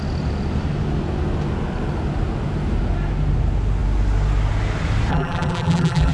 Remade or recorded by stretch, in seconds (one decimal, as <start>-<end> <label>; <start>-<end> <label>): 0.0-5.1 recorded; 5.1-6.1 remade